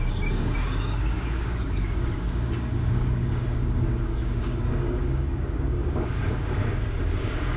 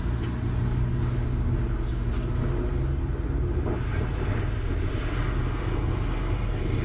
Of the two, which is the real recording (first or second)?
second